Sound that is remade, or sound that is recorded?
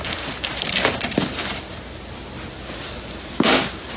recorded